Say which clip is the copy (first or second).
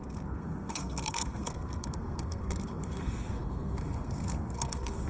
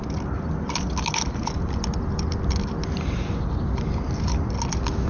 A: first